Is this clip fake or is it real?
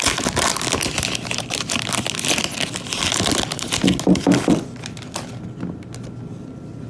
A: real